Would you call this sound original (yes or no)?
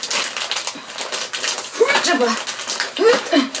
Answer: yes